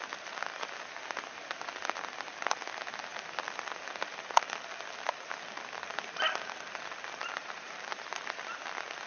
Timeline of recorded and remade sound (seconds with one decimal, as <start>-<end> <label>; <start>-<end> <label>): 0.0-7.4 recorded; 7.4-8.5 remade; 8.5-9.1 recorded